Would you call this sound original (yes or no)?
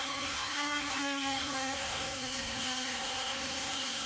no